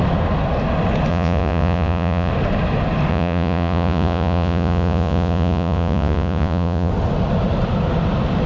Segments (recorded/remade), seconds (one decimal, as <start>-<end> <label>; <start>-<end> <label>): 0.0-1.1 recorded; 1.1-2.3 remade; 2.3-3.1 recorded; 3.1-6.9 remade; 6.9-8.5 recorded